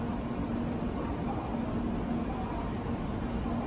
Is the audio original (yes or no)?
yes